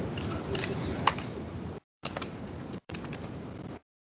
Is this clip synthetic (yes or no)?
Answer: yes